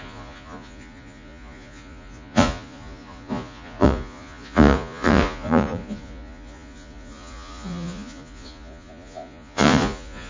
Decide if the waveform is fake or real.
fake